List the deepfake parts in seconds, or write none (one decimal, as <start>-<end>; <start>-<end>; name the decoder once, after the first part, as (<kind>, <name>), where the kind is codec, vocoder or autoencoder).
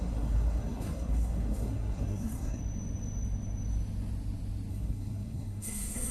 0.0-2.6 (codec, SNAC); 4.7-6.1